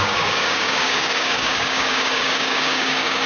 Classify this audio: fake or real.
fake